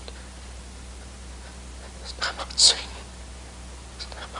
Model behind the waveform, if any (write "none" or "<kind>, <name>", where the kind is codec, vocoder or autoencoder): none